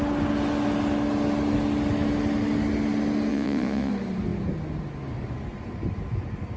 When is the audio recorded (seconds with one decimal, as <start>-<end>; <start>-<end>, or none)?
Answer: 0.0-3.3; 3.9-6.6